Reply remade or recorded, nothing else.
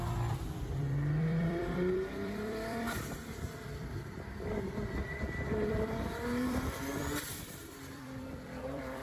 remade